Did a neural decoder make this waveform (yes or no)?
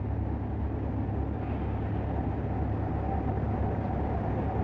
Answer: no